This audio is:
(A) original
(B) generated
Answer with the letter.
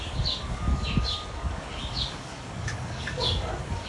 B